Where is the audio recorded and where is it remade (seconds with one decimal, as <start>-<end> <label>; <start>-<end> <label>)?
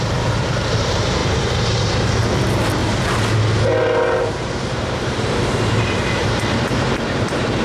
0.0-2.8 remade; 2.8-3.8 recorded; 3.8-7.6 remade